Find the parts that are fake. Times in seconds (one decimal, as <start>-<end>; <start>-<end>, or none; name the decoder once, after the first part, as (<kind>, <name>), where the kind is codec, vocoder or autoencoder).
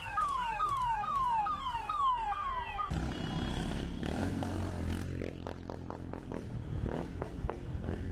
0.0-2.5 (codec, SNAC); 3.5-4.6; 7.0-8.1